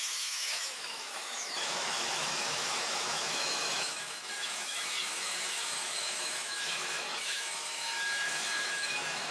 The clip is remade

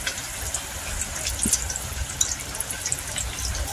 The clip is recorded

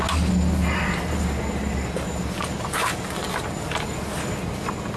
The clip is recorded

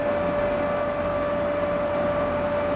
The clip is recorded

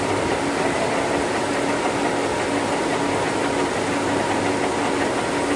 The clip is recorded